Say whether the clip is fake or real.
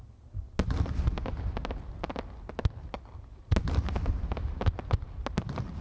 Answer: real